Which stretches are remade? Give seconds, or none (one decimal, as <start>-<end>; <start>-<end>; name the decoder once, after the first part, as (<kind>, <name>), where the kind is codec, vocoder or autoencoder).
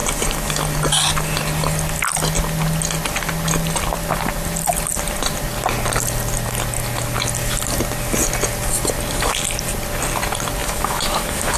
10.6-11.6 (autoencoder, DAC-VAE)